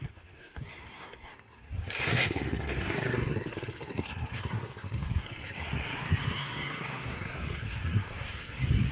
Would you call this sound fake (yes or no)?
yes